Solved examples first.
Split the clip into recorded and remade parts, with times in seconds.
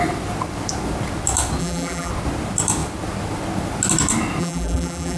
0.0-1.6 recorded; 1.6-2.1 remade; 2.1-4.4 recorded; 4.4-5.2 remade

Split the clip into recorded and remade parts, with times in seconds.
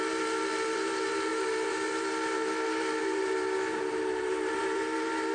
0.0-5.3 remade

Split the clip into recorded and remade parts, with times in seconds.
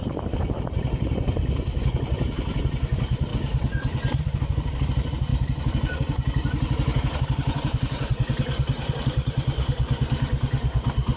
0.0-3.3 remade; 3.3-4.2 recorded; 4.2-11.2 remade